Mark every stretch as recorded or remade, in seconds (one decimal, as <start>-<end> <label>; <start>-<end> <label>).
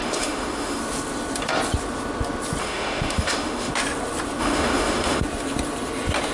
0.0-0.8 remade; 0.8-2.6 recorded; 2.6-3.7 remade; 3.7-4.4 recorded; 4.4-5.2 remade; 5.2-6.3 recorded